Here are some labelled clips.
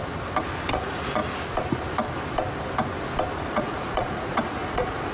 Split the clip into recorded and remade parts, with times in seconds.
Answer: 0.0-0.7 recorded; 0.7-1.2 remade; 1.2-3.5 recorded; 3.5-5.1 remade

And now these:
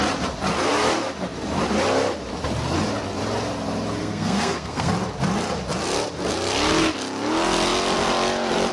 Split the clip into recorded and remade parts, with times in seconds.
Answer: 0.0-4.0 recorded; 4.0-4.9 remade; 4.9-8.7 recorded

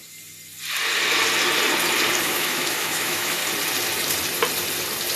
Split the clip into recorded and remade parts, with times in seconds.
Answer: 0.0-2.2 recorded; 2.2-3.4 remade; 3.4-5.2 recorded

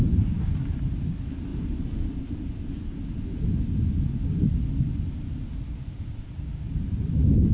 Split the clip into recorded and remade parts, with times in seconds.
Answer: 0.0-7.5 recorded

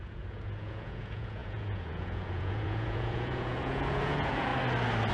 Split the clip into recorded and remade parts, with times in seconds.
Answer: 0.0-4.5 remade; 4.5-5.1 recorded

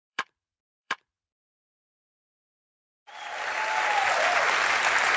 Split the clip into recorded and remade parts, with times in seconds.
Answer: 0.0-3.1 remade; 3.1-5.2 recorded

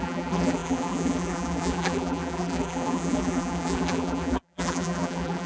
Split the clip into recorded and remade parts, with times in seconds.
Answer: 0.0-5.5 remade